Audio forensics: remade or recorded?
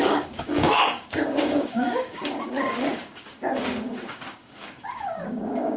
remade